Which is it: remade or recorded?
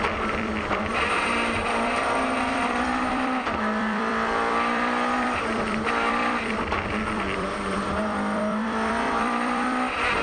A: remade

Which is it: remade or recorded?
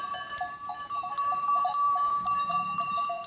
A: remade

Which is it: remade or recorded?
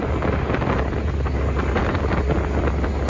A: recorded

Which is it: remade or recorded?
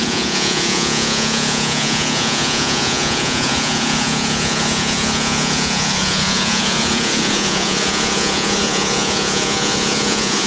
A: remade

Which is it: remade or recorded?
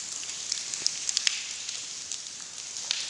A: recorded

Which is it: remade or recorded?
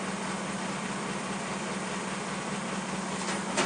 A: recorded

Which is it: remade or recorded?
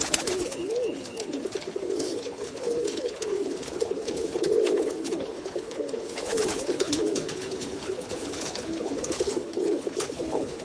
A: remade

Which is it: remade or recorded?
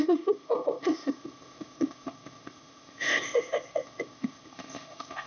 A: remade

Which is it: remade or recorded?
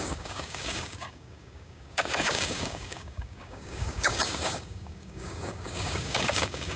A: remade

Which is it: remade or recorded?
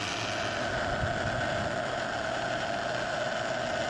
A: recorded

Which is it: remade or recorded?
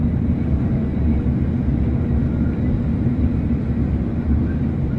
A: recorded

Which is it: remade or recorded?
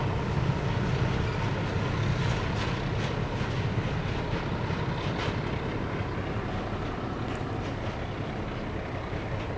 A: recorded